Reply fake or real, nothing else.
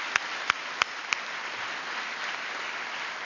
real